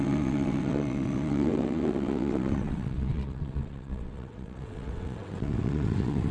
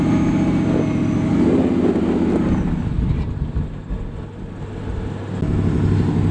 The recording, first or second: second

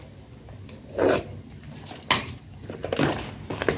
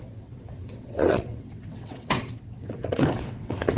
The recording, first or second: first